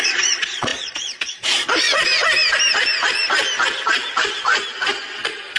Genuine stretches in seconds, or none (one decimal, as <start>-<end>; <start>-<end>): 2.1-5.6